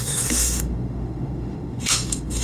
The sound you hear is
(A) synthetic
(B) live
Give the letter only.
A